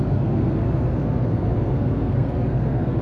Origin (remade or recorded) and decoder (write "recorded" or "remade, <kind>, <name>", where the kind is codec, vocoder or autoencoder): remade, codec, SNAC